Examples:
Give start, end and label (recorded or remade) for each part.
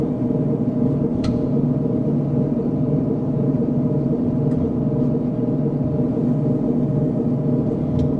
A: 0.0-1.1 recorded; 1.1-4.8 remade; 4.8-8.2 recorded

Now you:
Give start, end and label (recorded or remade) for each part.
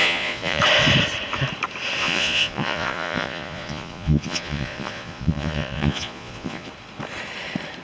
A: 0.0-0.6 remade; 0.6-2.0 recorded; 2.0-6.7 remade; 6.7-7.8 recorded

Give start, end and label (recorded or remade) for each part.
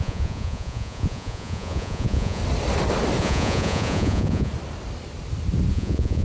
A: 0.0-2.4 remade; 2.4-3.2 recorded; 3.2-4.5 remade; 4.5-5.7 recorded; 5.7-6.2 remade